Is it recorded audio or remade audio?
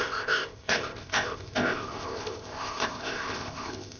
remade